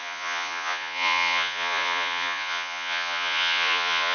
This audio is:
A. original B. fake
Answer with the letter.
B